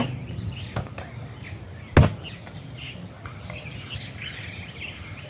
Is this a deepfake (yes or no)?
no